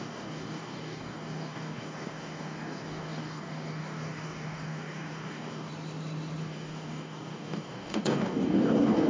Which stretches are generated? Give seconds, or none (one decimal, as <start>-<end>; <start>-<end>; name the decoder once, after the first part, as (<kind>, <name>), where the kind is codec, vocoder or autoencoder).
0.0-5.7 (codec, DAC); 6.4-9.1